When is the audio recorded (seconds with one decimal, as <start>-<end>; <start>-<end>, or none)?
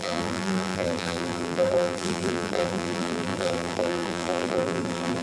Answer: none